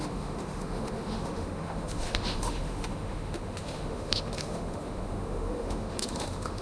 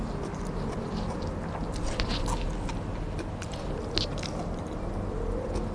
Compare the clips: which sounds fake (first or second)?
first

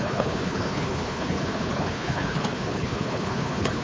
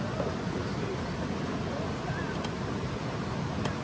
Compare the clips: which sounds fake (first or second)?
first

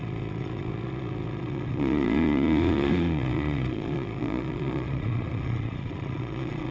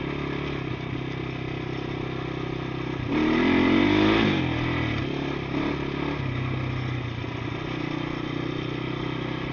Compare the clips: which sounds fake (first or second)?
first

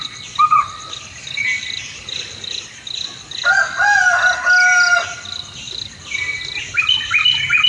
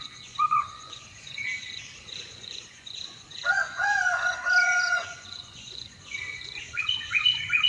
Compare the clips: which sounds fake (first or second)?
second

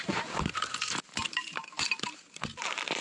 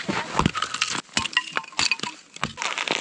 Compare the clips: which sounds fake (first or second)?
first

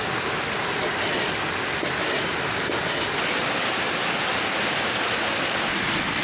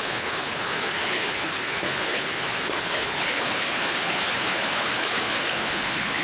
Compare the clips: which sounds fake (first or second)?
second